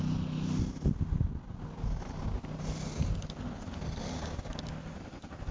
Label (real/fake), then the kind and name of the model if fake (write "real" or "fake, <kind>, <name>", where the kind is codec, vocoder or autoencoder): real